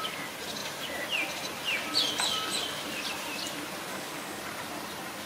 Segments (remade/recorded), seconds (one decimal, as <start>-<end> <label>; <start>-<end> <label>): 0.0-3.9 recorded; 3.9-4.4 remade; 4.4-5.3 recorded